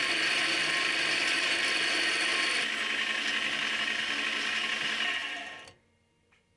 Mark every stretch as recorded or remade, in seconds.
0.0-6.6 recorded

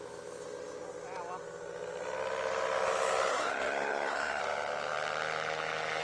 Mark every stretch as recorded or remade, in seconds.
0.0-3.3 recorded; 3.3-4.4 remade; 4.4-6.0 recorded